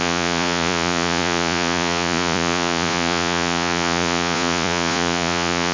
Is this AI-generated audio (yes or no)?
yes